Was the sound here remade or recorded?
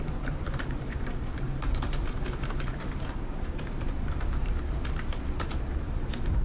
remade